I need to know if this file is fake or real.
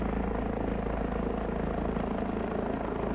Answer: real